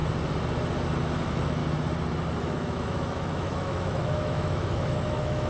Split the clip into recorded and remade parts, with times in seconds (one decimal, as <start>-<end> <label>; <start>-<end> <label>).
0.0-1.2 recorded; 1.2-1.6 remade; 1.6-2.4 recorded; 2.4-5.5 remade